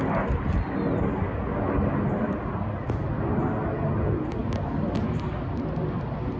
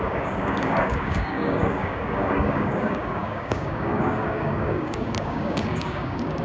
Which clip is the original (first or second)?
first